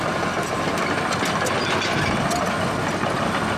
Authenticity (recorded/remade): recorded